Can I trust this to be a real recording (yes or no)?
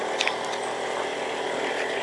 yes